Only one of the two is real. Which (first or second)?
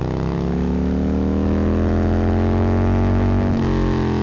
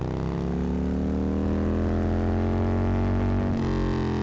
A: second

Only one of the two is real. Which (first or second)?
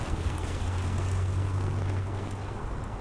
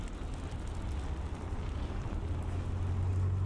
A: second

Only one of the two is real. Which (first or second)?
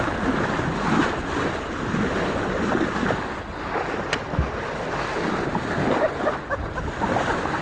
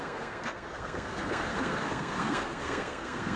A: first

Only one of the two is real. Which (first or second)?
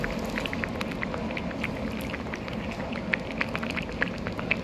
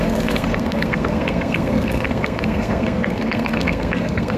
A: first